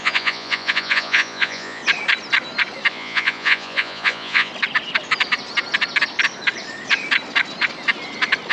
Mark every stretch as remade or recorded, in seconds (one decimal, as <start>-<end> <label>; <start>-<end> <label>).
0.0-1.8 remade; 1.8-2.9 recorded; 2.9-4.5 remade; 4.5-8.5 recorded